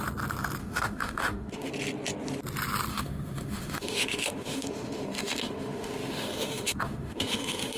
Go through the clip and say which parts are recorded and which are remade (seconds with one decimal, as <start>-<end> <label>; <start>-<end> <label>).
0.0-0.6 recorded; 0.6-1.7 remade; 1.7-2.9 recorded; 2.9-7.8 remade